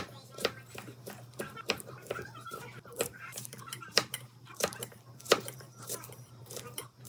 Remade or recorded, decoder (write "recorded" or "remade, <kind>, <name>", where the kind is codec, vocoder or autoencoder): remade, vocoder, BigVGAN v2